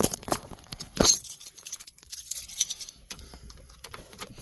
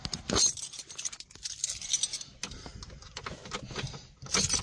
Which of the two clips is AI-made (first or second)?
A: first